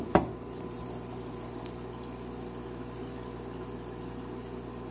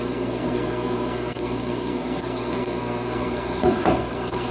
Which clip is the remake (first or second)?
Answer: second